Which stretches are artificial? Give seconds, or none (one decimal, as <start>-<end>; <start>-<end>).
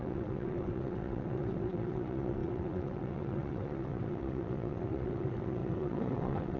0.0-6.6